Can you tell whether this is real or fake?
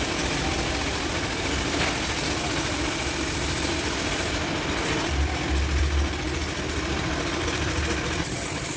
fake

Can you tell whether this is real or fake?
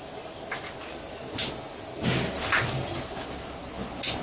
real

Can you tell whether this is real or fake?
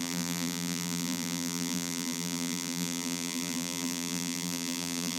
fake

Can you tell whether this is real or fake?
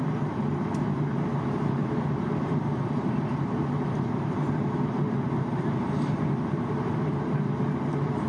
fake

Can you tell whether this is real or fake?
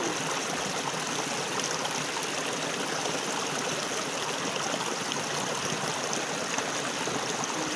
real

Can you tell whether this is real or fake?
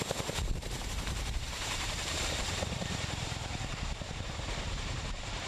fake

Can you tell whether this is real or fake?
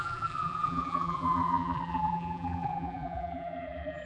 fake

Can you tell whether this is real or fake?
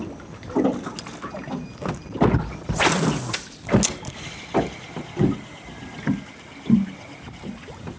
real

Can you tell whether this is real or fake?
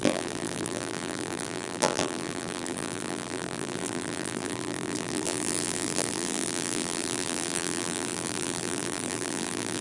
fake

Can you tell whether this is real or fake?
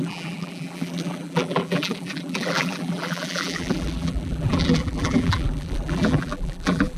fake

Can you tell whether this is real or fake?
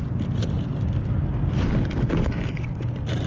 real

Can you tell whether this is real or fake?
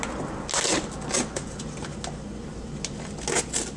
real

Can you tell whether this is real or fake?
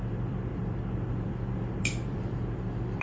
fake